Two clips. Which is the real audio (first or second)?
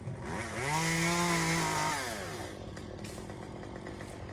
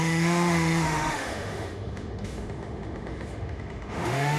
first